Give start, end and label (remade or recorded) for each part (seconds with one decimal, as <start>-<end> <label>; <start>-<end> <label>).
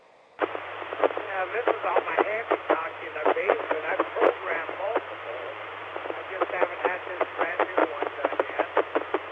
0.0-9.3 remade